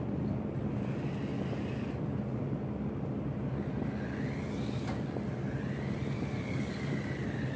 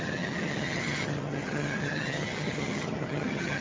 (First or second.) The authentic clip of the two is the first